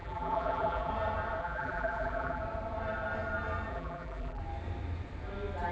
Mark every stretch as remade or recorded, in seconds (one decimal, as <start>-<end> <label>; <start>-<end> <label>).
0.0-0.9 remade; 0.9-1.4 recorded; 1.4-2.4 remade; 2.4-3.7 recorded; 3.7-4.4 remade; 4.4-5.7 recorded